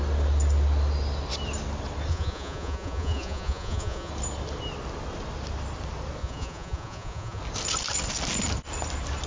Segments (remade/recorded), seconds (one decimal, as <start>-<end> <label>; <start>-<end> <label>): 0.0-2.1 recorded; 2.1-4.1 remade; 4.1-6.2 recorded; 6.2-7.4 remade; 7.4-9.3 recorded